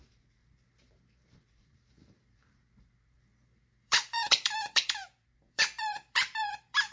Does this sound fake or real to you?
fake